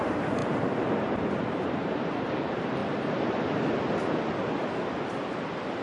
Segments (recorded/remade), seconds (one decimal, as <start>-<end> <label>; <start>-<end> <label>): 0.0-2.8 remade; 2.8-5.8 recorded